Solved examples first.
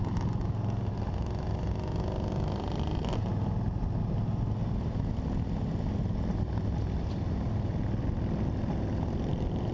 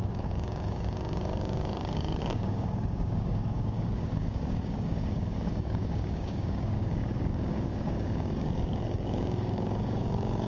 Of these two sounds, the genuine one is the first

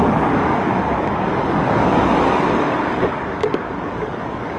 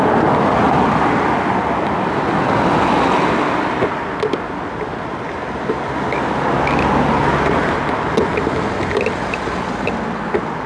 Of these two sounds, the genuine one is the second